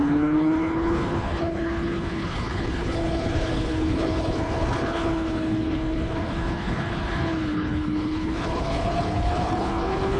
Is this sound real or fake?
fake